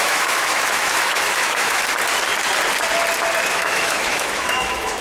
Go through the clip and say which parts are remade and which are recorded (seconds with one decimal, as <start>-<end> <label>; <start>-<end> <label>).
0.0-1.8 remade; 1.8-3.5 recorded; 3.5-5.0 remade